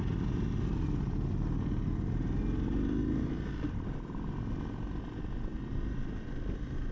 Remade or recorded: recorded